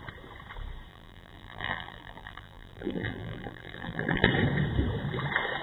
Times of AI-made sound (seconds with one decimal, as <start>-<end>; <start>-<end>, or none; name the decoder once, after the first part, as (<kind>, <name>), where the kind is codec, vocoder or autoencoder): 0.9-4.3 (vocoder, BigVGAN v2)